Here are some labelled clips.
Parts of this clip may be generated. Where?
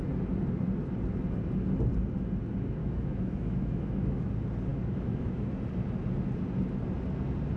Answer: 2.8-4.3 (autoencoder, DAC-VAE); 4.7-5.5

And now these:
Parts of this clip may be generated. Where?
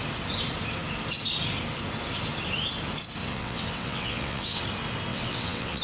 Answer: 3.2-4.6 (vocoder, WaveNeXt); 5.1-5.8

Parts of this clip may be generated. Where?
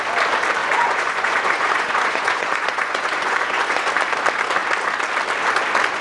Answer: 0.6-3.9 (vocoder, Vocos)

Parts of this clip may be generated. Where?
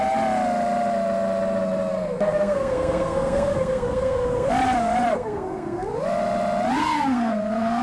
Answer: 1.9-4.5 (codec, SNAC); 5.1-5.9; 6.8-7.8